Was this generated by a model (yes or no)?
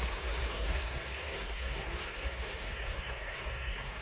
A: yes